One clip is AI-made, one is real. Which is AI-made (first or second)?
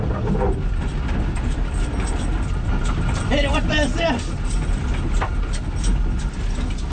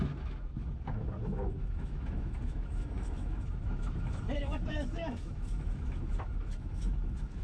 second